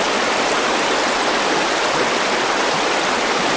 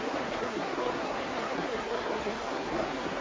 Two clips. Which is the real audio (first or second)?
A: first